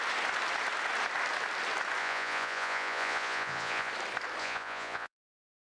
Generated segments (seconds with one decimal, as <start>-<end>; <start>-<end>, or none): 2.0-3.9; 4.4-5.6